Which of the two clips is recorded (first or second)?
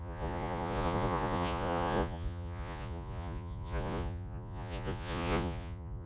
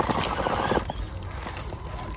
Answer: second